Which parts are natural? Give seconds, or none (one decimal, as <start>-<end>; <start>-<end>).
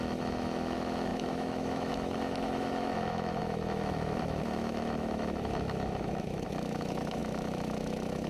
none